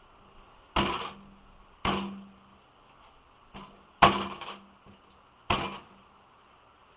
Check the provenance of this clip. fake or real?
real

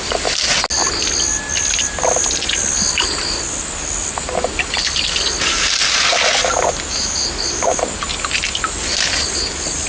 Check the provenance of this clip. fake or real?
real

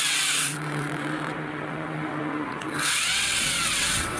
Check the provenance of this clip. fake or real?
fake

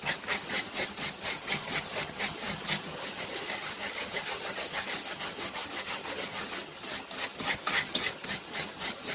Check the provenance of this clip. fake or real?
fake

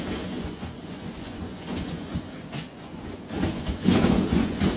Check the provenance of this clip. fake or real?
fake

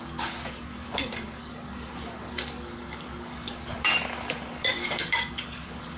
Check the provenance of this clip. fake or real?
fake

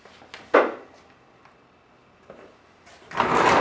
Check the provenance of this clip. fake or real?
real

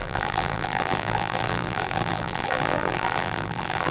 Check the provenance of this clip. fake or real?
fake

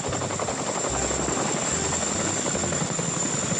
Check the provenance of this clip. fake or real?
real